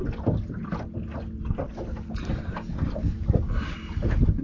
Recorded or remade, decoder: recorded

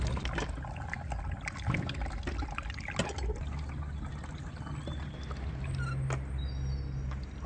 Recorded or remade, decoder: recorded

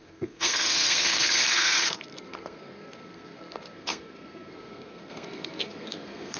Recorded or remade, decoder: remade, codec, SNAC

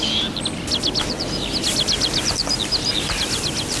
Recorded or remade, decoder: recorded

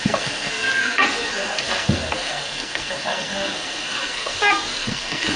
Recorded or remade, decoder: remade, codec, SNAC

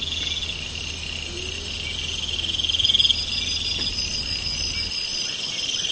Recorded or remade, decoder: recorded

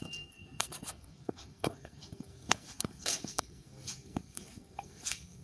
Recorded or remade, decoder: remade, codec, SNAC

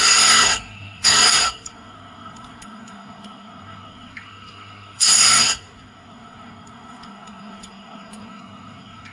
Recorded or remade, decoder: remade, codec, SNAC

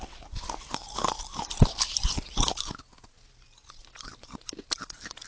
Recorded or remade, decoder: recorded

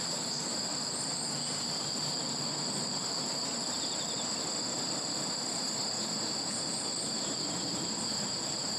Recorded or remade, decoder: recorded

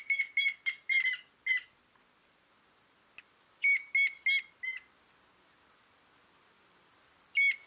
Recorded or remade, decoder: recorded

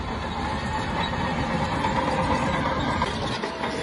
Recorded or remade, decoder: recorded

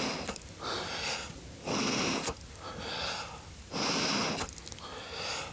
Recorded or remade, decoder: recorded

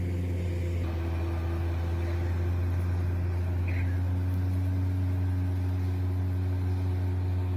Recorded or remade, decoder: recorded